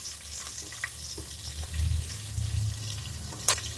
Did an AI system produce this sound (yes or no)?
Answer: no